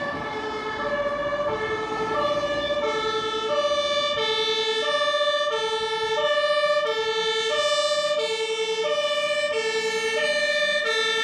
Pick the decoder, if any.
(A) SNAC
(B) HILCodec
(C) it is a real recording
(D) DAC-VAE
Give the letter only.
C